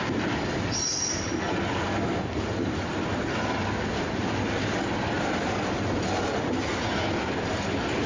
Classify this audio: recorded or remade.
recorded